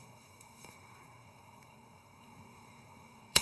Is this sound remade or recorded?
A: remade